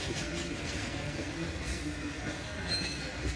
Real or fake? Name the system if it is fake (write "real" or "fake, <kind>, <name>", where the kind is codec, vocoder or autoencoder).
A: fake, codec, SNAC